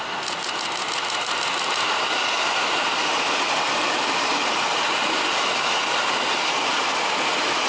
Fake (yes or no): no